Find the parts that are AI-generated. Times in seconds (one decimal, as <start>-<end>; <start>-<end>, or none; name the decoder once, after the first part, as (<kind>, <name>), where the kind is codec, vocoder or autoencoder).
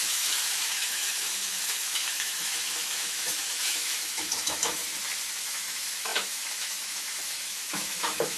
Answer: 0.0-4.8 (autoencoder, DAC-VAE); 5.4-8.4